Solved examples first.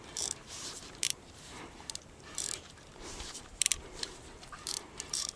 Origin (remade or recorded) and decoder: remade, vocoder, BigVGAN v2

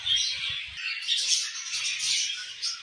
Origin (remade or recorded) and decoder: recorded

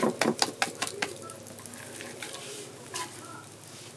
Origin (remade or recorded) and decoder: recorded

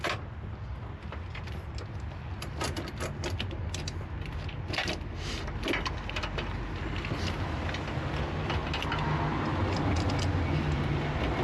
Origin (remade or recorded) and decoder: recorded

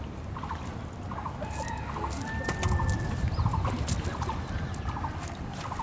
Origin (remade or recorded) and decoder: recorded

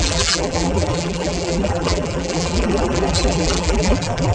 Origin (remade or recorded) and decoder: remade, vocoder, BigVGAN v2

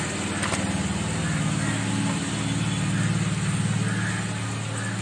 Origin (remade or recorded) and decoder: recorded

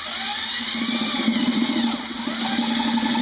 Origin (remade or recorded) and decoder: recorded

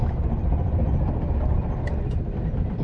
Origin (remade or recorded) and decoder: recorded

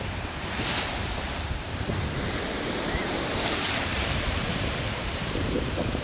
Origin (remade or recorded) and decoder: remade, vocoder, BigVGAN v2